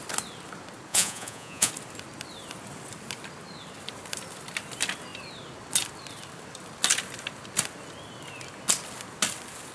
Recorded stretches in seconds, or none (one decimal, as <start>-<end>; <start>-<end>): 0.0-0.9; 1.7-9.7